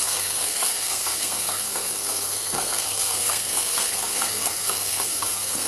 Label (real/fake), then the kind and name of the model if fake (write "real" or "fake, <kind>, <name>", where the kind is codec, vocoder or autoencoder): fake, codec, SNAC